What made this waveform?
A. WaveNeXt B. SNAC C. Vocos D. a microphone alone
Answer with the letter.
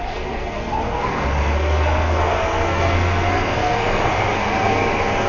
B